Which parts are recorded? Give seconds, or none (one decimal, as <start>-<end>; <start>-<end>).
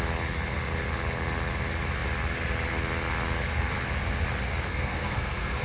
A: 0.0-4.7